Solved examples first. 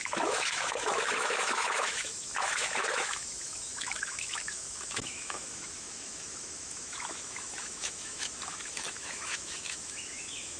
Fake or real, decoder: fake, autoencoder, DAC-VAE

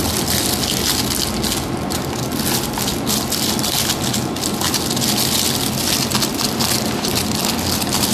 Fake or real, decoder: real